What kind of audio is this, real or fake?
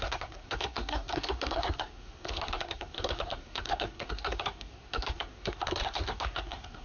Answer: fake